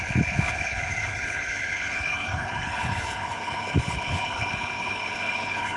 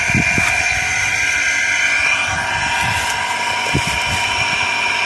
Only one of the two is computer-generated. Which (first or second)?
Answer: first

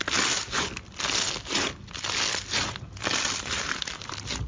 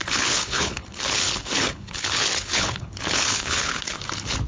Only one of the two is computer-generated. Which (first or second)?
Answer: second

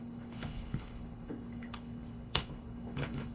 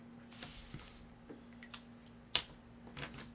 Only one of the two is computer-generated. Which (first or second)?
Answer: first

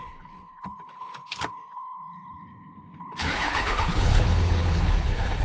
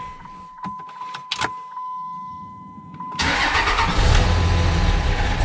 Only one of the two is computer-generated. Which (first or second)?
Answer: first